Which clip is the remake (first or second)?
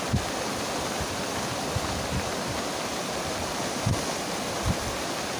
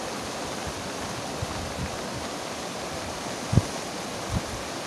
first